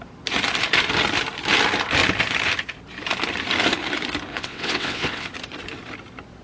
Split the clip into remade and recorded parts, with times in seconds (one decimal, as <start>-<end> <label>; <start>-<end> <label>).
0.0-4.3 recorded; 4.3-5.3 remade; 5.3-6.4 recorded